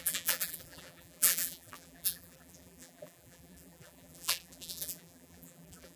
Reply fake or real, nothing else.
fake